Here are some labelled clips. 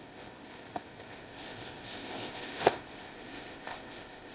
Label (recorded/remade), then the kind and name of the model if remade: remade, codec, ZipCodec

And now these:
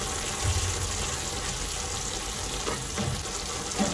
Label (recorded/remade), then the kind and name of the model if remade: recorded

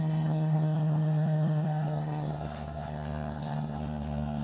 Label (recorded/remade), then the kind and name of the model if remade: remade, codec, SNAC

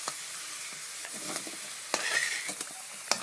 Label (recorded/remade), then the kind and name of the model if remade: recorded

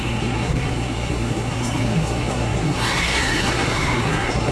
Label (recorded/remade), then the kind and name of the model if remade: remade, codec, SNAC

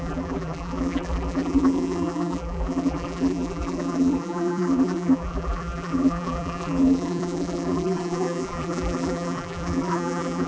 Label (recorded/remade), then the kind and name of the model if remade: remade, vocoder, BigVGAN v2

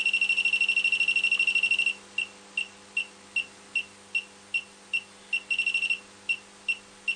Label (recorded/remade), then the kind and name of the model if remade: recorded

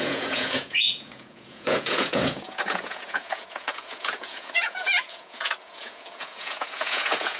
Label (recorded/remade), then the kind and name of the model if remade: remade, vocoder, Vocos